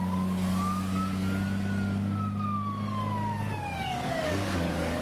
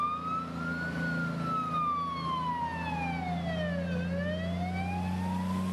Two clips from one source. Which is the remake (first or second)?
first